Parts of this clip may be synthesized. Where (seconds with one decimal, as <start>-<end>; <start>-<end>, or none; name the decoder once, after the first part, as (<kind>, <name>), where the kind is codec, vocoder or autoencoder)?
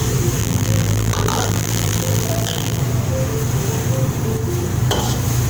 0.4-2.8 (vocoder, BigVGAN v2)